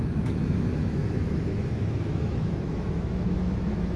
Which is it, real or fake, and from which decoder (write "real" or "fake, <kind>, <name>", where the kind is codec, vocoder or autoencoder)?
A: fake, autoencoder, DAC-VAE